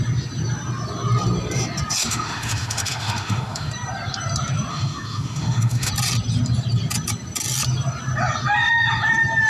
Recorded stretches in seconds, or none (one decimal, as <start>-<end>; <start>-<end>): 0.0-2.0; 3.7-4.7; 5.9-9.5